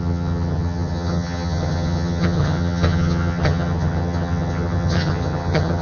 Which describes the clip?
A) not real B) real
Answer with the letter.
A